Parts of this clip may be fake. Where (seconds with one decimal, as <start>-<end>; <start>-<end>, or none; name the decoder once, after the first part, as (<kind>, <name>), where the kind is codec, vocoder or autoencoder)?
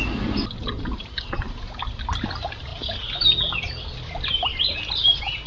none